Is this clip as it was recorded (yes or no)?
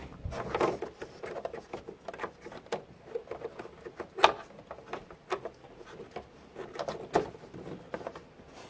yes